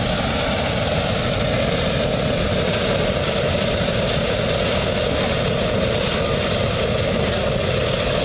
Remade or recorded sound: recorded